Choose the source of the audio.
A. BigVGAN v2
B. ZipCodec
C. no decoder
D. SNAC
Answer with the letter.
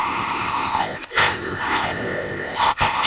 B